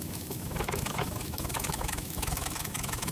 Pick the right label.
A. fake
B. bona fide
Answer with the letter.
A